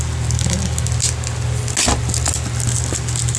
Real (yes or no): yes